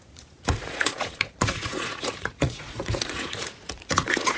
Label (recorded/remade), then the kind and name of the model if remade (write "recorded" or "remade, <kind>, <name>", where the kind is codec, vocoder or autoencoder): remade, vocoder, Vocos